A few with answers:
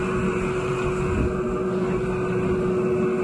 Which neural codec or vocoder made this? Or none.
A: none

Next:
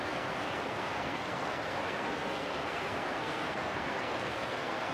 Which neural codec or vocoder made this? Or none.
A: codec, SNAC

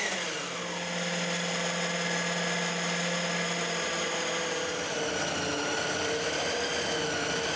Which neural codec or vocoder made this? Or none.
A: none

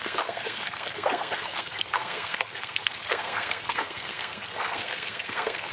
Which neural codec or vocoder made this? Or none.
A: codec, SNAC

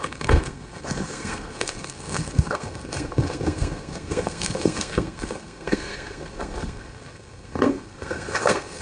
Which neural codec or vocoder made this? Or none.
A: codec, SNAC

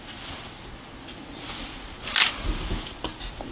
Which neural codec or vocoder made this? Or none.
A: none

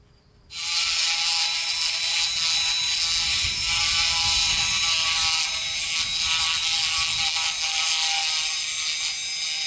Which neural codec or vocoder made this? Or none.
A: none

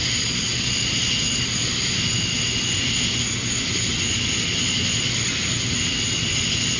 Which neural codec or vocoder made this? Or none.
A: none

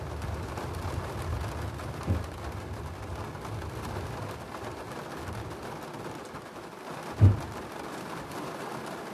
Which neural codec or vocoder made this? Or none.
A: none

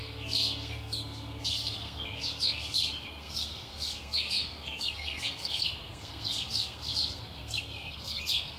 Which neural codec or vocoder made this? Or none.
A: codec, SNAC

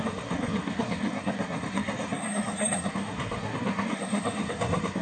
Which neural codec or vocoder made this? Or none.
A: codec, SNAC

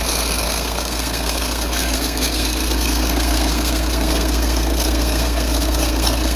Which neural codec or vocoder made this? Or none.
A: codec, SNAC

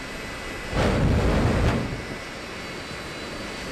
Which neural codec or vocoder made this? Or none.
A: none